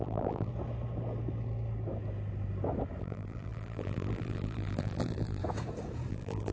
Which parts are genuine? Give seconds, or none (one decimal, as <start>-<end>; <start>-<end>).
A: 0.5-3.0; 5.4-6.1